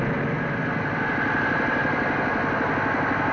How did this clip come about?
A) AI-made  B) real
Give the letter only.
B